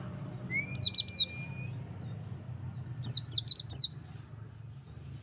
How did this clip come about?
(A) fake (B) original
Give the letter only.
B